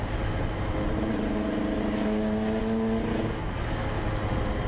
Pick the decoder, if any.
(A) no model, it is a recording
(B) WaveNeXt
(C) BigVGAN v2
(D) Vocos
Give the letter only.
A